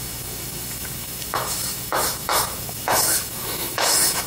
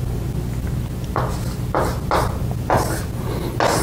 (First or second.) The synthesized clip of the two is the first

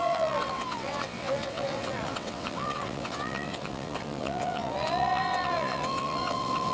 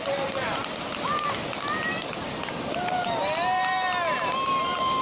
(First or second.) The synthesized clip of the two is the first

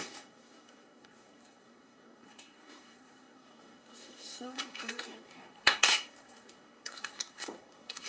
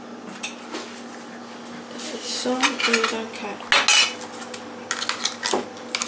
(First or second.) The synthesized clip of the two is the first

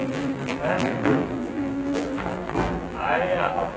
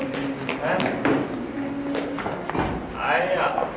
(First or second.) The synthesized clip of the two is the first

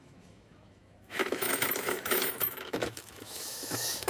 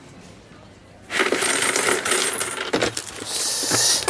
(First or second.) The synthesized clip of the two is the first